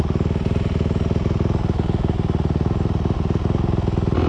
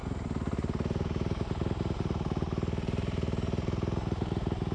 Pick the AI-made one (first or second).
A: second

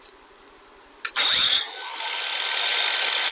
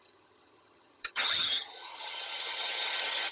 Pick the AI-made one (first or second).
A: second